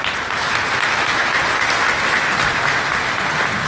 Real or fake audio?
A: real